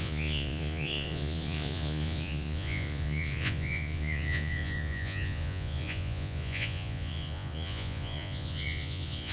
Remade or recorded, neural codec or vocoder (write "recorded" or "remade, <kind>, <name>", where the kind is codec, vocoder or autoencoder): remade, vocoder, Vocos